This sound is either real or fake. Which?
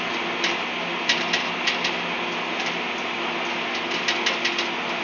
real